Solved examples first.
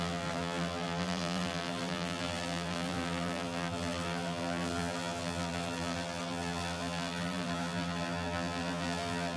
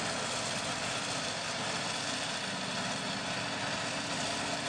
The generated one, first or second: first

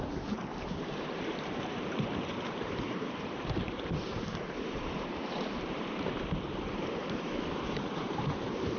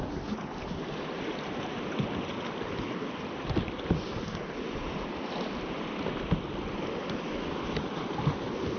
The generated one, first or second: first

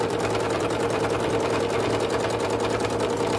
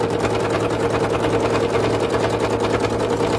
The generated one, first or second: first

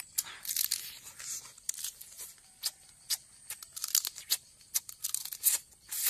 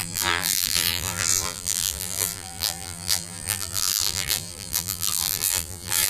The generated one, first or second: second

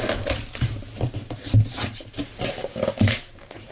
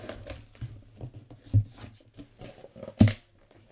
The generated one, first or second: first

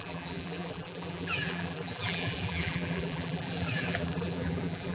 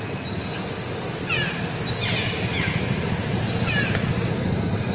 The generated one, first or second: first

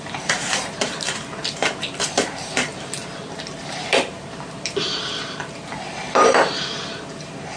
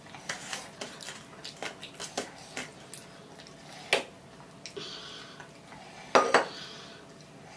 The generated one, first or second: first